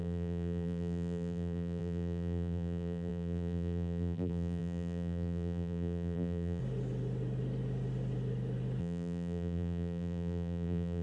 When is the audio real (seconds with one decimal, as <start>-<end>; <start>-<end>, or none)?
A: 6.6-8.8